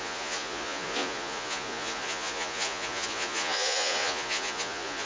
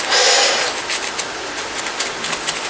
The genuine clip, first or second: second